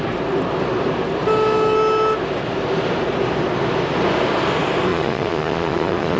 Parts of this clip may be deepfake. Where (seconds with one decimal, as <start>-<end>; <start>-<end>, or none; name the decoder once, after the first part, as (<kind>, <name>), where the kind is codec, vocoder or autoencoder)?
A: 4.9-6.2 (vocoder, Vocos)